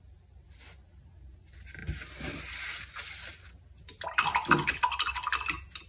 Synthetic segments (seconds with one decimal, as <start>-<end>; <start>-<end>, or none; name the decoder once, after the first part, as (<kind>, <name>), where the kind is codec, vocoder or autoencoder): none